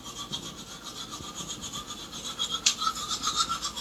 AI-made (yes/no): no